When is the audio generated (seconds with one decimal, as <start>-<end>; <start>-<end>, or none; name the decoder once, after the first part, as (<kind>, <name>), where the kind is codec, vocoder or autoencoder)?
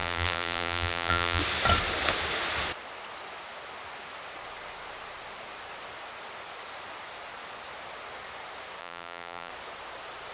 0.0-1.4 (vocoder, BigVGAN v2); 8.8-9.5